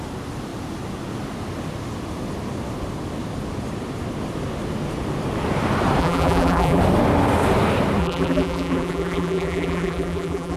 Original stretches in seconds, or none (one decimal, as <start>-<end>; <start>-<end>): 0.0-6.0; 6.8-8.0